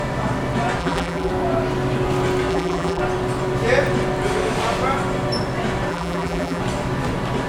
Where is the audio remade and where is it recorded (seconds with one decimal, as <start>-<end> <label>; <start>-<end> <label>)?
0.0-0.8 recorded; 0.8-1.3 remade; 1.3-2.5 recorded; 2.5-3.0 remade; 3.0-5.9 recorded; 5.9-6.6 remade; 6.6-7.5 recorded